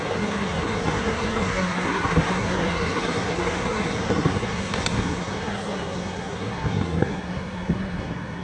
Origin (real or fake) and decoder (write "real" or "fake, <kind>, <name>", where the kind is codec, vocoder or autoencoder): fake, codec, SNAC